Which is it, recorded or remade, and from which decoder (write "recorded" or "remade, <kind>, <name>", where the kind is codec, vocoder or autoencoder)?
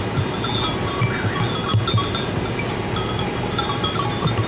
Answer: recorded